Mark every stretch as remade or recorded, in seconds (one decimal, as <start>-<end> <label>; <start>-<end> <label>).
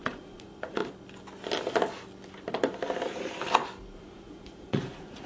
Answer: 0.0-0.8 remade; 0.8-4.0 recorded; 4.0-5.3 remade